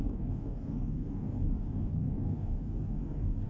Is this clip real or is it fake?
fake